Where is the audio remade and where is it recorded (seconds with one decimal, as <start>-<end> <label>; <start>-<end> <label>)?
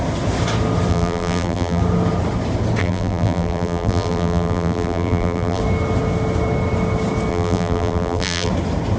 0.0-0.9 recorded; 0.9-1.8 remade; 1.8-2.8 recorded; 2.8-5.6 remade; 5.6-7.3 recorded; 7.3-8.5 remade; 8.5-9.0 recorded